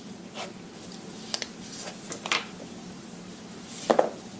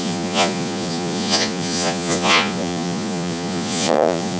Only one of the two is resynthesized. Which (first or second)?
second